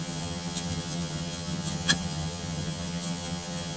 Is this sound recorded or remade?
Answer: remade